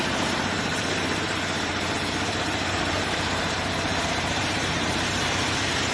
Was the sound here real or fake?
fake